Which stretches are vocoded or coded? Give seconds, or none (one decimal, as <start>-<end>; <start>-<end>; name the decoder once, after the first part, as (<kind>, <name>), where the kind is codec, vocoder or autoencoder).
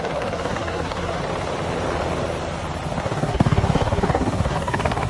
0.0-1.2 (codec, SNAC); 3.0-5.1